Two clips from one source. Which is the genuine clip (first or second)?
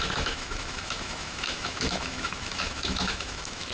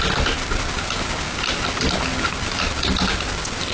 second